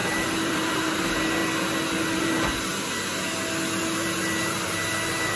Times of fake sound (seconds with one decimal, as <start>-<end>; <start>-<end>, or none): 0.0-1.4; 2.2-2.7; 3.8-5.4